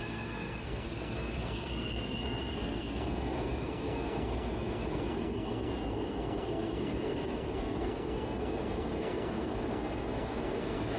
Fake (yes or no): yes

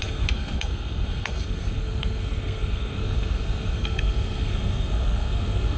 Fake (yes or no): yes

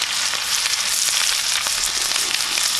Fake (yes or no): no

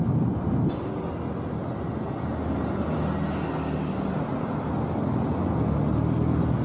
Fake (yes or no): no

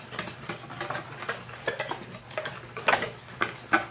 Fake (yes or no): no